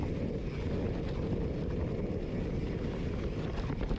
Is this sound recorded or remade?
recorded